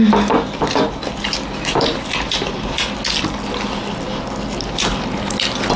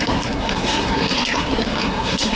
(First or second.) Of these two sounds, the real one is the first